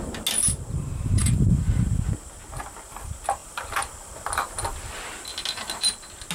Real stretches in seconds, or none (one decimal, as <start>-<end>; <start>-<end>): 0.0-3.4; 4.1-6.3